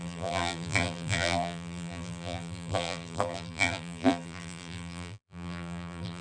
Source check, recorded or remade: remade